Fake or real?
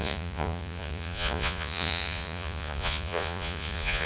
fake